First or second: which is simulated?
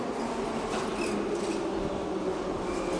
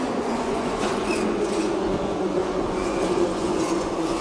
second